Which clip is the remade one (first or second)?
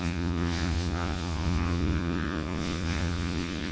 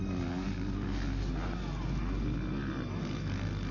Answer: first